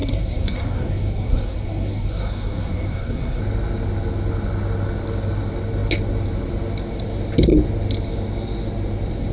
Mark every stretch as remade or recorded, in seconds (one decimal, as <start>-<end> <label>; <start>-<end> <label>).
0.0-3.4 remade; 3.4-9.3 recorded